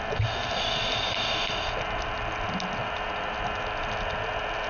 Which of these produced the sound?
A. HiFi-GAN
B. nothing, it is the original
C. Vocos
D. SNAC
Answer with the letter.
B